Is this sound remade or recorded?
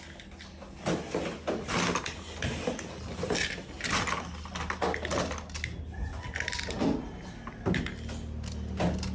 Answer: recorded